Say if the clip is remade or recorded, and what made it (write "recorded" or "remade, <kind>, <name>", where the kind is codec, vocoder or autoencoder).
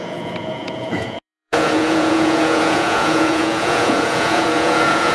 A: remade, vocoder, Vocos